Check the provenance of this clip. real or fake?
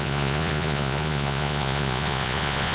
fake